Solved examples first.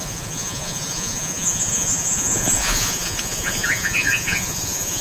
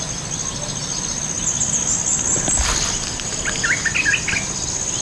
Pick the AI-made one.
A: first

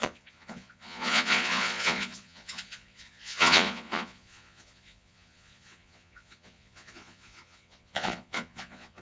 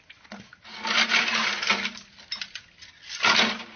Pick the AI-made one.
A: first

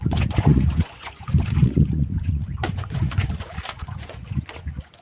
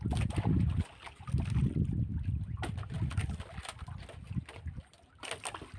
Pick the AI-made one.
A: first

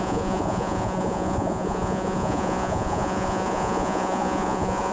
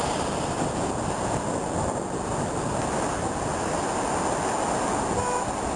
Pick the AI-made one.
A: first